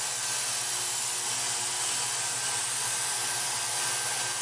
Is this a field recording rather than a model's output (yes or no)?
yes